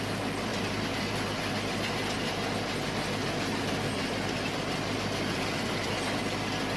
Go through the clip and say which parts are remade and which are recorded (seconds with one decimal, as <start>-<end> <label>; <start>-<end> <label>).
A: 0.0-0.5 recorded; 0.5-1.5 remade; 1.5-4.0 recorded; 4.0-6.2 remade; 6.2-6.8 recorded